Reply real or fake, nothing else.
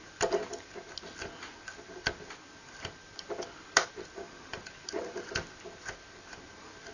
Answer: real